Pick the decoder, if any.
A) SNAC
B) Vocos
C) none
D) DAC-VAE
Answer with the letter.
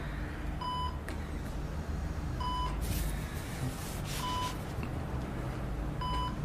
C